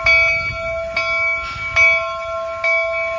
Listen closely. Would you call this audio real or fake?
real